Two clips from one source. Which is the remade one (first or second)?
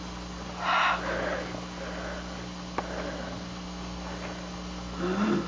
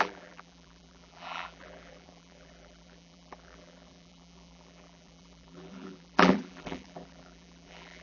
second